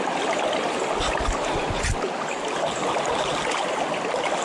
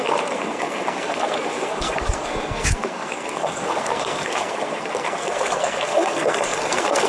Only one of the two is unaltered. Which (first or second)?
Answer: first